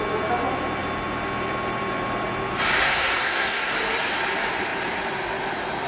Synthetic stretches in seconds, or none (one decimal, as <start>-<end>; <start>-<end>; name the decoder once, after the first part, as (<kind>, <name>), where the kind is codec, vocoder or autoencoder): 2.8-3.7 (codec, SNAC)